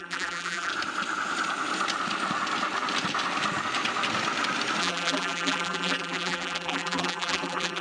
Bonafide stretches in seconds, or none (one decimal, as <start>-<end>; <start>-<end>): 0.7-4.8